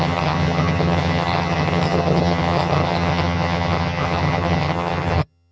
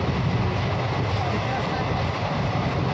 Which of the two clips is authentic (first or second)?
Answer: second